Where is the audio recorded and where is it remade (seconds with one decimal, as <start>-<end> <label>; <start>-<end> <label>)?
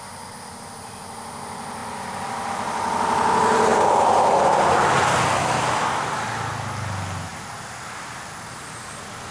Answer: 0.0-1.8 recorded; 1.8-2.5 remade; 2.5-3.7 recorded; 3.7-5.2 remade; 5.2-9.3 recorded